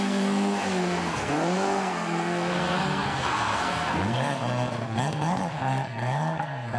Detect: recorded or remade remade